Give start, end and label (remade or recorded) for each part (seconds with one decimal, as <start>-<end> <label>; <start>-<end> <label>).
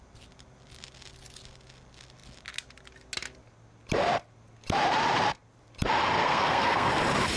0.0-6.2 recorded; 6.2-6.9 remade; 6.9-7.4 recorded